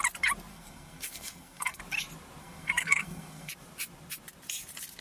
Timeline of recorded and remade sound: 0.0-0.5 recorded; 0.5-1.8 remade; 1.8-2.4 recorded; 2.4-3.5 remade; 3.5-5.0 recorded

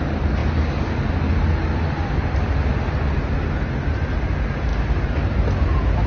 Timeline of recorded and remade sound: 0.0-6.1 recorded

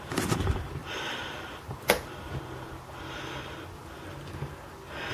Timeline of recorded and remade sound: 0.0-0.8 recorded; 0.8-2.3 remade; 2.3-5.1 recorded